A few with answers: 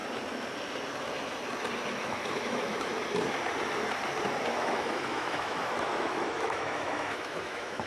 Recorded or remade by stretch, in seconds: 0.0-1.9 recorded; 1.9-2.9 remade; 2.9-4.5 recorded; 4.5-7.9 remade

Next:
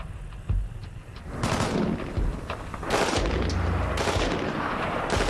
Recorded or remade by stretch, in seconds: 0.0-5.3 recorded

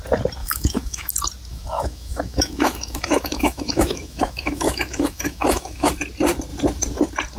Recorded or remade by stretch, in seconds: 0.0-0.4 recorded; 0.4-1.1 remade; 1.1-1.5 recorded; 1.5-5.9 remade; 5.9-7.4 recorded

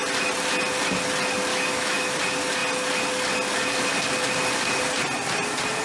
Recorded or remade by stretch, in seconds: 0.0-1.5 recorded; 1.5-2.2 remade; 2.2-5.8 recorded

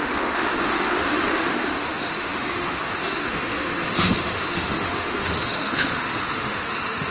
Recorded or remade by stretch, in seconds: 0.0-7.1 remade

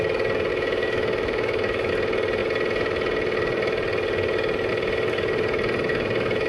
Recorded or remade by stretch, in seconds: 0.0-0.5 recorded; 0.5-1.9 remade; 1.9-5.9 recorded; 5.9-6.5 remade

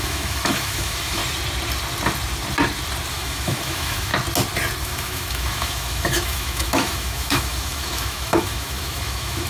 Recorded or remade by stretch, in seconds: 0.0-1.2 remade; 1.2-3.1 recorded; 3.1-4.1 remade; 4.1-4.8 recorded; 4.8-9.5 remade